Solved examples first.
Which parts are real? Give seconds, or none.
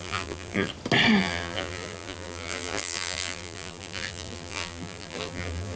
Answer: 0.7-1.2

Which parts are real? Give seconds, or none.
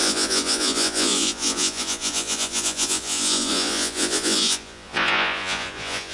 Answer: none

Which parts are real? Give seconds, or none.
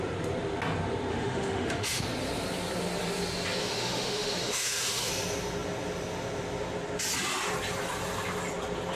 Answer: 0.0-1.1; 2.0-3.6; 5.1-9.0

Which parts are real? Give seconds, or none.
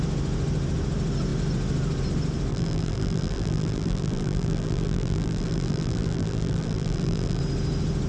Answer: 0.0-2.5; 7.4-8.1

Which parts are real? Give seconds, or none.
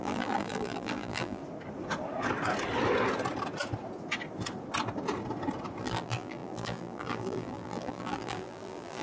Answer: 1.4-5.8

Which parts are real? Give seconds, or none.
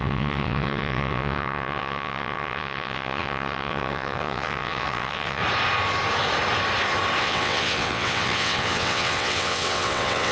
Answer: 5.4-7.2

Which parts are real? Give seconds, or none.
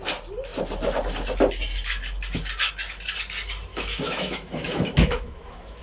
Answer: 0.0-3.7